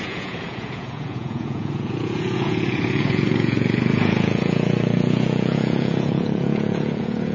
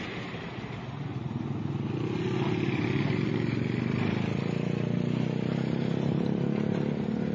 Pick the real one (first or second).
second